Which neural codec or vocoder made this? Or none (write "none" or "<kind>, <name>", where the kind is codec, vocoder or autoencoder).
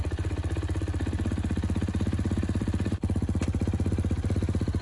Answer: vocoder, BigVGAN v2